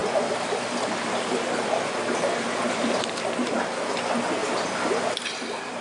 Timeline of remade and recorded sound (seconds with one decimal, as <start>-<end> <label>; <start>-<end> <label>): 0.0-3.5 remade; 3.5-4.4 recorded; 4.4-5.8 remade